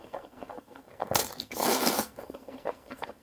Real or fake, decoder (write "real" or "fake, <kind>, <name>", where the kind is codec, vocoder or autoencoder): fake, codec, SNAC